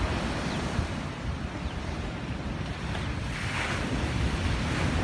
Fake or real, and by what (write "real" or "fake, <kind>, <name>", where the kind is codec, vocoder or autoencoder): real